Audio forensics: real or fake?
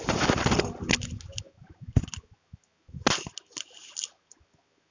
real